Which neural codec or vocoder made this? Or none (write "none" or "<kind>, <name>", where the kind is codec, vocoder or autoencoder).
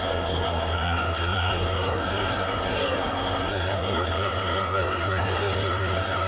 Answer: codec, SNAC